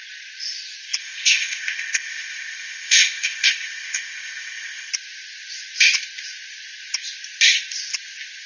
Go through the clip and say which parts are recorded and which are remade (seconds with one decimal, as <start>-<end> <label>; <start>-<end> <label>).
0.0-1.0 recorded; 1.0-4.9 remade; 4.9-8.5 recorded